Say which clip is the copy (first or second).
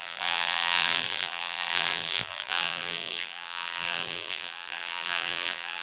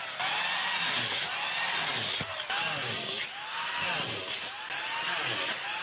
first